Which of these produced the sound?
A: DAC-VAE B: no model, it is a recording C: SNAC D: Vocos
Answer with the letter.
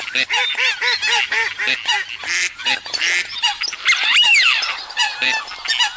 B